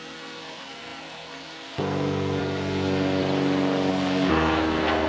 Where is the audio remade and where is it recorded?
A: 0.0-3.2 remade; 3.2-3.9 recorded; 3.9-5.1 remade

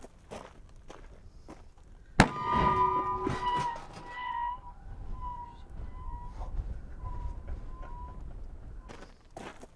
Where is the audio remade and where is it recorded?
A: 0.0-9.8 recorded